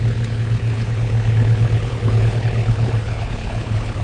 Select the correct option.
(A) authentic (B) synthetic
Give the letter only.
B